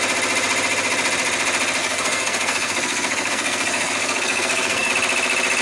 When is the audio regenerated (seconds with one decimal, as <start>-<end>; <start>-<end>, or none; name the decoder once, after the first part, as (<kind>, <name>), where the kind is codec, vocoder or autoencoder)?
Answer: 1.8-4.9 (codec, SNAC)